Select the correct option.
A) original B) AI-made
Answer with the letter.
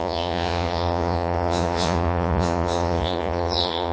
B